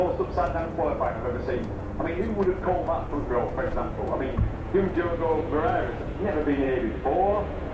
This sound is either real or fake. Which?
fake